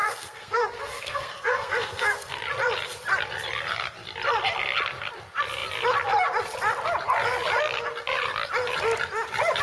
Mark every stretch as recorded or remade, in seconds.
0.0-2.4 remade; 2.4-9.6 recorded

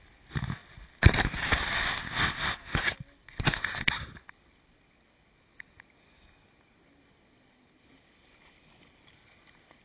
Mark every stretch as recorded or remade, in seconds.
0.0-9.8 recorded

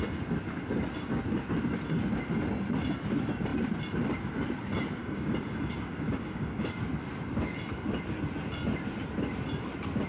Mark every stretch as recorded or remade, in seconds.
0.0-5.0 recorded; 5.0-6.8 remade; 6.8-10.1 recorded

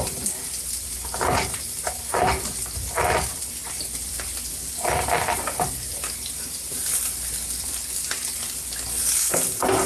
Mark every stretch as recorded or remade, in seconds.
0.0-9.9 recorded

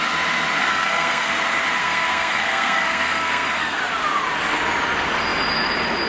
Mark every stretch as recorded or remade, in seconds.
0.0-0.6 recorded; 0.6-1.3 remade; 1.3-1.8 recorded; 1.8-3.8 remade; 3.8-6.1 recorded

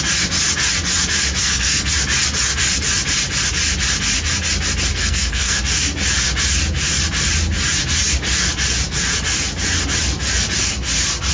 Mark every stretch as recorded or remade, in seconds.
0.0-1.4 recorded; 1.4-1.9 remade; 1.9-4.9 recorded; 4.9-5.6 remade; 5.6-11.3 recorded

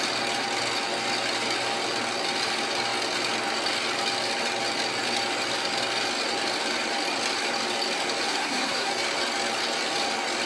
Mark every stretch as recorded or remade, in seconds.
0.0-8.3 recorded; 8.3-8.9 remade; 8.9-10.5 recorded

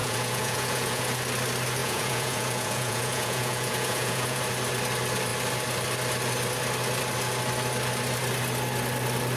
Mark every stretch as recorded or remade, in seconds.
0.0-1.0 remade; 1.0-1.8 recorded; 1.8-4.4 remade; 4.4-9.4 recorded